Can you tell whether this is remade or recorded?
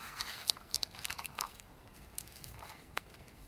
remade